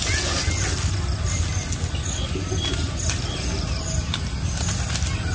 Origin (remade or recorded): recorded